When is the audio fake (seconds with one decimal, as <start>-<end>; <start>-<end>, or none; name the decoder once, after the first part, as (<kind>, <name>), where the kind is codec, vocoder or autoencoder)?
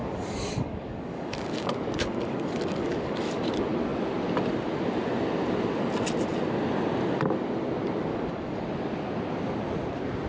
0.0-3.4 (codec, DAC); 8.1-8.6